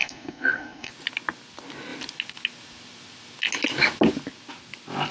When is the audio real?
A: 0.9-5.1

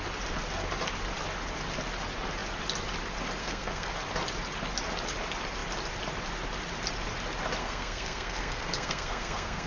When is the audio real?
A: 0.0-3.4; 3.9-7.6

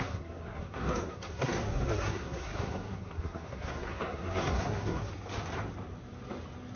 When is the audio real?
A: 5.1-6.8

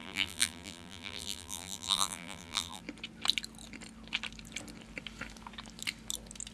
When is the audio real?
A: 2.8-6.5

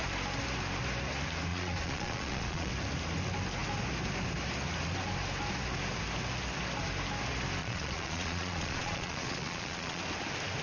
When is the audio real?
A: 0.0-1.5; 2.7-7.6; 10.0-10.6

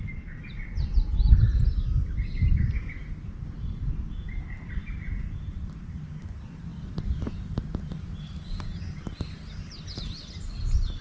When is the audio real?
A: 0.0-11.0

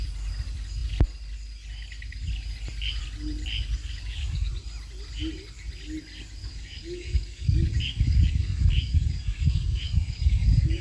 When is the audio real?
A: 0.0-3.8; 4.5-6.4